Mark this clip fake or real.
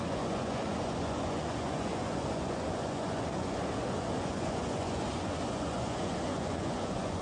fake